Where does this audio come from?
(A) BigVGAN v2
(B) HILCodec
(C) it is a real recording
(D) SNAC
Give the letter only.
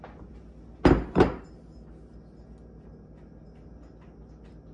C